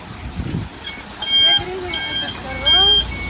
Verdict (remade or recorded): recorded